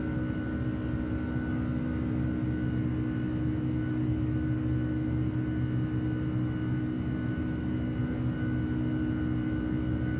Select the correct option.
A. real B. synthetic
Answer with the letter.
A